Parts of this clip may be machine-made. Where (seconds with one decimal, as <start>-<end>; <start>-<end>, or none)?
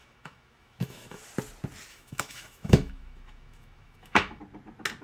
0.0-1.2; 1.9-4.4